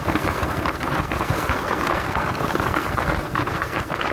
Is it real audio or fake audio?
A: fake